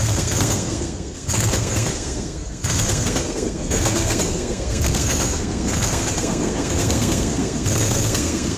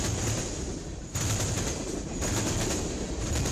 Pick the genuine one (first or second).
second